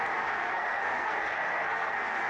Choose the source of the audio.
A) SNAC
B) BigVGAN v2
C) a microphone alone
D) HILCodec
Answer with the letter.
A